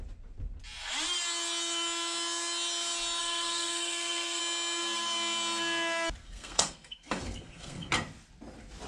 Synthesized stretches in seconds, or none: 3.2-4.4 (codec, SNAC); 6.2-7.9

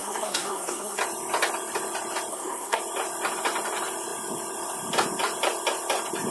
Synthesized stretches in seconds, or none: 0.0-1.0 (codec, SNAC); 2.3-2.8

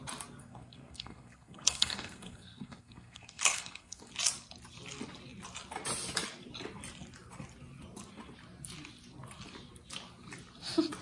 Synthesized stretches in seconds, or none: 0.4-4.1 (codec, SNAC)

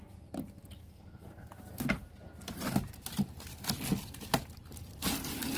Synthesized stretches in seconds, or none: 0.8-1.5 (codec, SNAC)

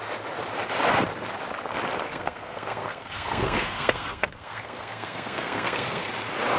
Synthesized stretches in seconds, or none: 2.1-6.1 (codec, SNAC)